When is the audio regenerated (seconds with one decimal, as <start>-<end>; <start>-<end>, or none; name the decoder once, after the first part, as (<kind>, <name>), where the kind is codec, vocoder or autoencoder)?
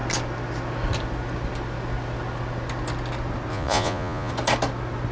3.5-4.3 (vocoder, Vocos)